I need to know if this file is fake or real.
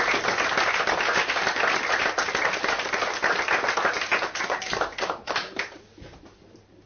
real